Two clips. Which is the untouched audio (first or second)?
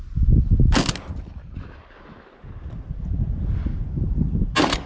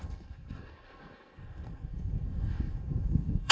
first